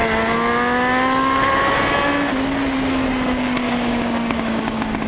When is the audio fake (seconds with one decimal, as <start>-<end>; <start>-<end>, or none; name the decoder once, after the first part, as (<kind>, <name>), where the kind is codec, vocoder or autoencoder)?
3.1-5.1 (codec, DAC)